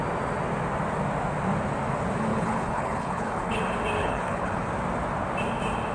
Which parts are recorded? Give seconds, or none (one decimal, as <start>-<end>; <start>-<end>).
0.0-2.3; 3.6-4.0; 4.7-5.9